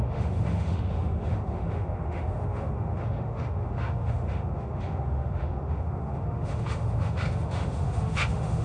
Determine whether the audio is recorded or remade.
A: remade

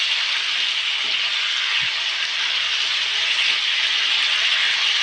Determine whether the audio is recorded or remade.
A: recorded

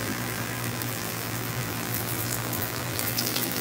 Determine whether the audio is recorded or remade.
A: remade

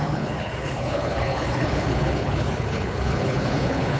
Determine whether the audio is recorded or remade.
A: remade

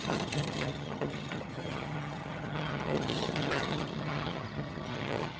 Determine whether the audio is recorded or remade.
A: remade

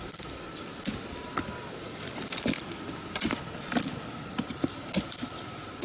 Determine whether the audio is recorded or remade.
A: recorded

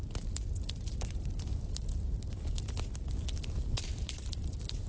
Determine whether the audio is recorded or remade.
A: recorded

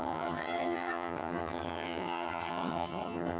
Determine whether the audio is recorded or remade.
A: remade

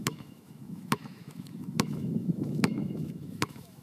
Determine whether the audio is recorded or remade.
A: remade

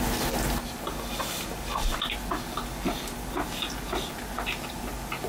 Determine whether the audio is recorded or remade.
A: recorded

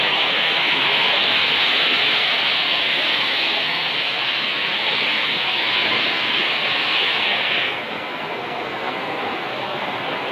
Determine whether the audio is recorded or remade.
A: remade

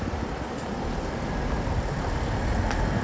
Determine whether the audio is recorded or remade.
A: recorded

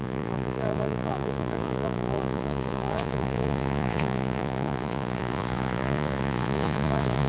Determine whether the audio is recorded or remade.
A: remade